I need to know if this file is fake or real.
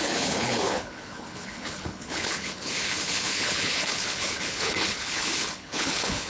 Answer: fake